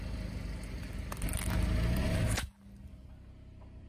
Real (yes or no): yes